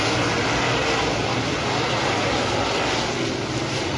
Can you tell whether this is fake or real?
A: real